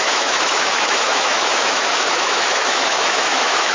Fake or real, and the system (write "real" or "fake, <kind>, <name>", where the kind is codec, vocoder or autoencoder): fake, autoencoder, DAC-VAE